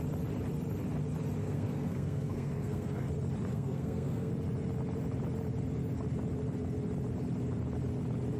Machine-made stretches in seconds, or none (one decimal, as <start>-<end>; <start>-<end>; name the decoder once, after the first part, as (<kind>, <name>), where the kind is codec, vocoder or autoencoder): 1.4-3.1 (codec, SNAC); 3.5-4.3